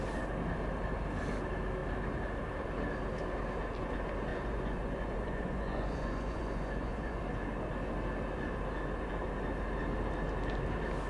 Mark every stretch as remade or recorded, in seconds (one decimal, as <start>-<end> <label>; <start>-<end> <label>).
0.0-4.3 recorded; 4.3-7.2 remade; 7.2-11.1 recorded